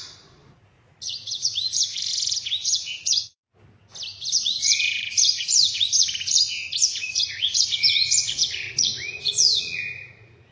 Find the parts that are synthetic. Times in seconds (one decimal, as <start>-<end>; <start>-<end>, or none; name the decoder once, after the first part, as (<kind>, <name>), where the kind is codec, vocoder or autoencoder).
0.0-3.4 (vocoder, Vocos); 4.3-10.5